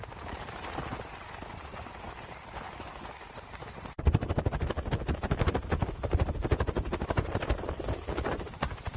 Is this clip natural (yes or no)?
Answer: yes